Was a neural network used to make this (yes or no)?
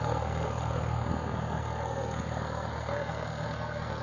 yes